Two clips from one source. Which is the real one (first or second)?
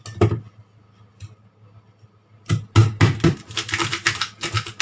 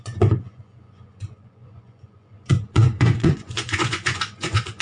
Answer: first